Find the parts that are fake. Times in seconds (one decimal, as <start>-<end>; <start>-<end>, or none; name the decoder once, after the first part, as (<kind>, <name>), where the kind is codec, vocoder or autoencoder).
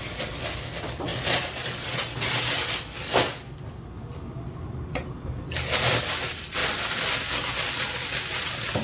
none